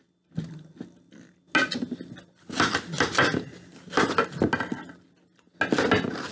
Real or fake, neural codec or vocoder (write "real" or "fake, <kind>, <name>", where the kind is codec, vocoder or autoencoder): real